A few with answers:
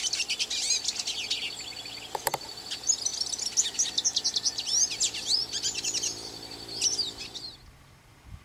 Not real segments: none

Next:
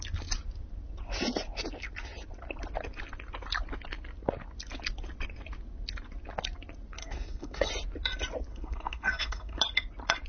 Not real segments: 7.0-7.7 (codec, SNAC); 8.5-9.6